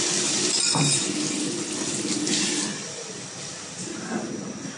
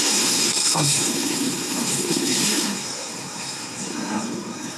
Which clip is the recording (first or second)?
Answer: first